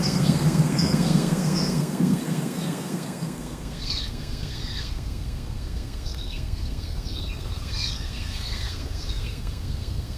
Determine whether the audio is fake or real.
fake